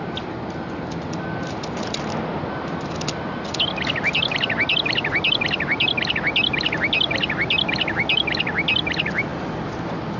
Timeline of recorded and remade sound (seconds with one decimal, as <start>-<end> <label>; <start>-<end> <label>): 0.0-10.2 recorded